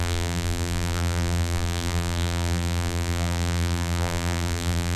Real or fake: fake